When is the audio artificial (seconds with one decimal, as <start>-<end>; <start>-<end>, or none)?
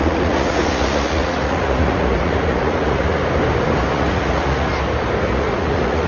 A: 0.0-3.2; 3.9-4.7; 5.2-6.1